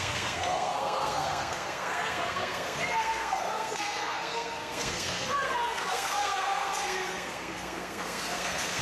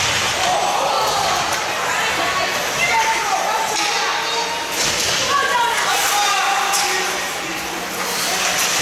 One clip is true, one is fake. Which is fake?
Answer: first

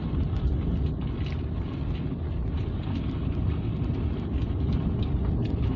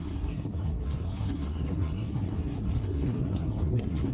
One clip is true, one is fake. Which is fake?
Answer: second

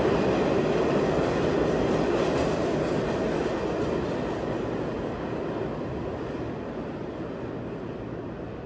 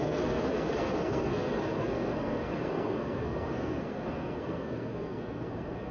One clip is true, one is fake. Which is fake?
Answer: second